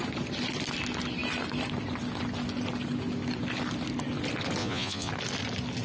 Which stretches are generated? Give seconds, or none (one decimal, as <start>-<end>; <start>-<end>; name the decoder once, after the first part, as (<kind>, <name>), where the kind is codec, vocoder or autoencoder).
4.6-5.1 (vocoder, Vocos)